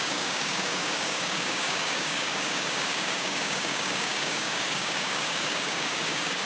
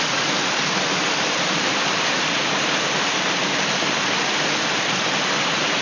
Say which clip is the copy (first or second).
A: first